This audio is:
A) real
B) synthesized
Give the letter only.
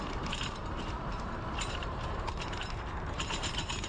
B